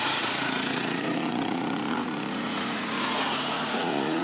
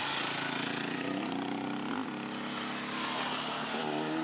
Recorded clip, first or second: second